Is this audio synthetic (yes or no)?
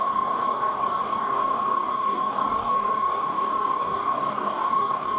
yes